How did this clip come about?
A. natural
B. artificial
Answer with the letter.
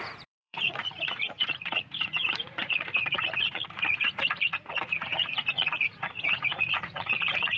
B